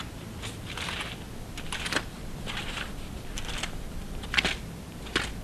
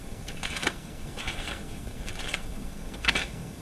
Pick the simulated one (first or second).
second